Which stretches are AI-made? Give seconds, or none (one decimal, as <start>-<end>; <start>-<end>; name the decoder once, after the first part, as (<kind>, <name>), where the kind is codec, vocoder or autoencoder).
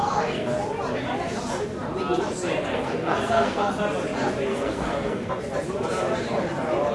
0.0-0.5 (codec, SNAC); 2.7-3.7; 4.5-5.3